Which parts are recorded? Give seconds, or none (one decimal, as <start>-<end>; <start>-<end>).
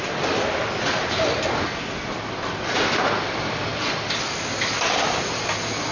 0.0-5.9